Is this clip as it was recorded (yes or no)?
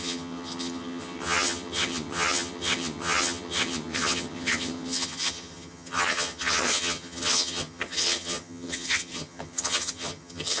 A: no